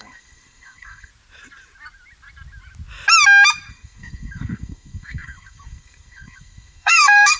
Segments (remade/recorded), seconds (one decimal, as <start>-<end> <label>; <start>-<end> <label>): 0.0-1.1 remade; 1.1-3.7 recorded; 3.7-7.4 remade